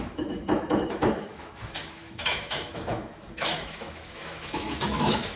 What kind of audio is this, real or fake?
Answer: fake